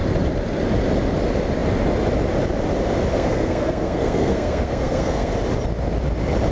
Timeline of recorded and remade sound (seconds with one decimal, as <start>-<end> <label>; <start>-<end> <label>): 0.0-3.1 recorded; 3.1-5.3 remade; 5.3-6.5 recorded